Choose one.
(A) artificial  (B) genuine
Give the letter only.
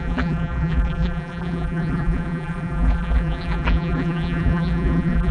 A